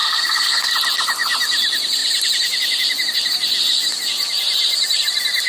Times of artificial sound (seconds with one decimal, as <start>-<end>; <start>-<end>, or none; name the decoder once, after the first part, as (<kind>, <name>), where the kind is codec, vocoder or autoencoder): 0.0-0.7 (codec, SNAC)